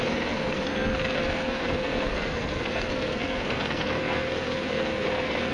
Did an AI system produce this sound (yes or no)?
yes